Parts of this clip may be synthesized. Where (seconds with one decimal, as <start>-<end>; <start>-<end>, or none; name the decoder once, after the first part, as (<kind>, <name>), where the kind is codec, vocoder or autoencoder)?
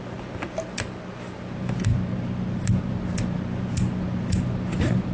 none